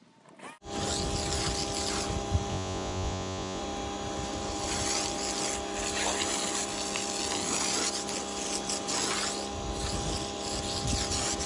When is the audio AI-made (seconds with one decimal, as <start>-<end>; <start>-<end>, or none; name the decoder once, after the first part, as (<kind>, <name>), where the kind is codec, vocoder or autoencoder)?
2.5-3.6 (vocoder, Vocos)